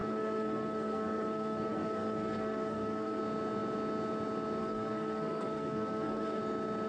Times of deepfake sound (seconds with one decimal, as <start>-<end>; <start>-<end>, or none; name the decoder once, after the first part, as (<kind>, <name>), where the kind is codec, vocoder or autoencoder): 0.0-3.2 (codec, SNAC); 4.6-6.4